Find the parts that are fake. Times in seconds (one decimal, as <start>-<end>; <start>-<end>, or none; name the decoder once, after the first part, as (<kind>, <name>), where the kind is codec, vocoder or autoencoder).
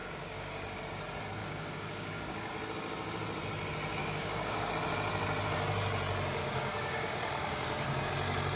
0.0-0.8 (codec, DAC); 1.4-2.5; 4.0-4.7; 6.4-8.1